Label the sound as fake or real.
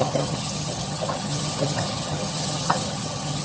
fake